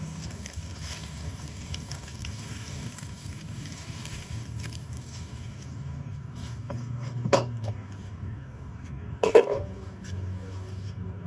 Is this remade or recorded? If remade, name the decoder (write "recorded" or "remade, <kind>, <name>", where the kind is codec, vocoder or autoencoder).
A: remade, codec, DAC